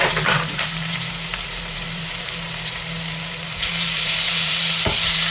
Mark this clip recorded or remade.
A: remade